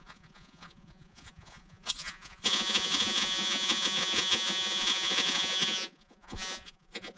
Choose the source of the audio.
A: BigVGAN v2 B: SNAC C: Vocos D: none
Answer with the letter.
C